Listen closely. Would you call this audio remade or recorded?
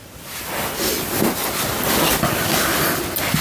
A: recorded